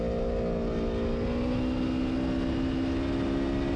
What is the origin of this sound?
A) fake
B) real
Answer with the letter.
B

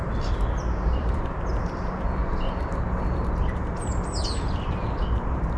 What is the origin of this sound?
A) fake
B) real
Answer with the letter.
B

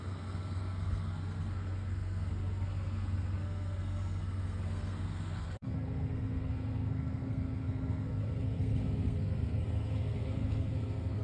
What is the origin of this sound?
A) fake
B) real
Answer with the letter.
A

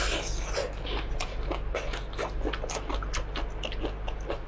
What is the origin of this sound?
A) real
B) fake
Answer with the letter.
A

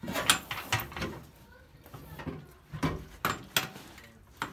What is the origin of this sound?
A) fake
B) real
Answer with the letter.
B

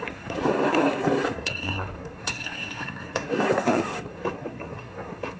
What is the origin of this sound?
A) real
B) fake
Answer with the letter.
B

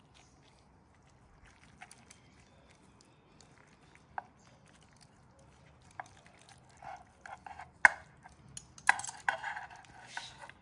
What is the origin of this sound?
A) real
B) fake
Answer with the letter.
A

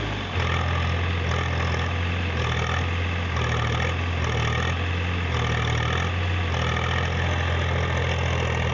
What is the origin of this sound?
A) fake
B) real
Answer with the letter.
B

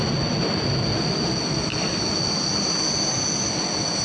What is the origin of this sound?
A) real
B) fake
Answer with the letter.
A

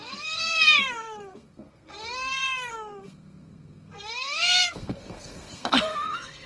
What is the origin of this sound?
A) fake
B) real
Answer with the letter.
A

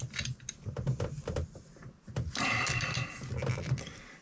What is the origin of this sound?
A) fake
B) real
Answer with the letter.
B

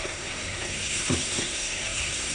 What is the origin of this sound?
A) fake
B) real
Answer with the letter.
A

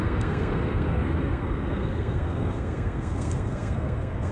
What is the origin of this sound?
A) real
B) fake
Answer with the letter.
B